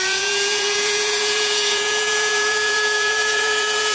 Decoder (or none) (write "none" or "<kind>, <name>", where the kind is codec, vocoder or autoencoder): vocoder, Vocos